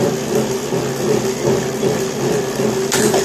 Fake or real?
real